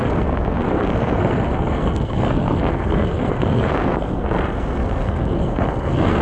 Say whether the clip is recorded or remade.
remade